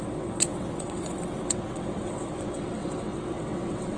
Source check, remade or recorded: remade